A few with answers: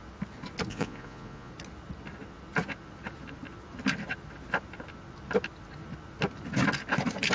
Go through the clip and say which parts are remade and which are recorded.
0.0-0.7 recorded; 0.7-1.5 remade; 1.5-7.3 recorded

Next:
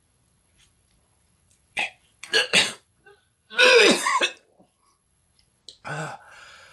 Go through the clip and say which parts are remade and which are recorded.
0.0-5.6 remade; 5.6-6.2 recorded; 6.2-6.7 remade

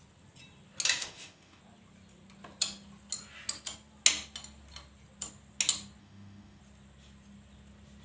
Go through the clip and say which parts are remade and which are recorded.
0.0-1.0 recorded; 1.0-1.6 remade; 1.6-6.0 recorded; 6.0-6.6 remade; 6.6-8.0 recorded

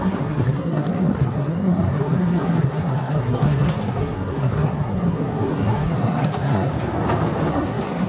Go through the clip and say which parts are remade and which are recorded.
0.0-6.7 remade; 6.7-7.5 recorded; 7.5-8.1 remade

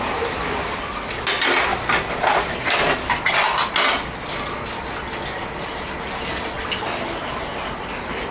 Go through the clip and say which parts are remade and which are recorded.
0.0-8.3 recorded

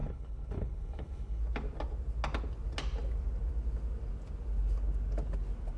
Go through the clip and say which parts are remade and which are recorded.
0.0-1.4 remade; 1.4-5.8 recorded